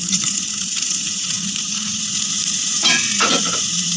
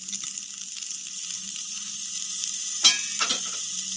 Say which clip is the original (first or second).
second